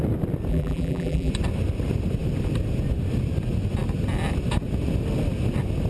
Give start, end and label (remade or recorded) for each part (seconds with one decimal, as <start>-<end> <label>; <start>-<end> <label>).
0.0-0.5 recorded; 0.5-1.3 remade; 1.3-5.9 recorded